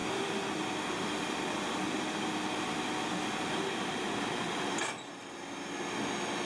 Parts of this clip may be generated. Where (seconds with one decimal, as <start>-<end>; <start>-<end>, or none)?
none